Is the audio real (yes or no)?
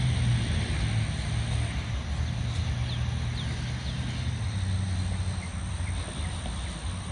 yes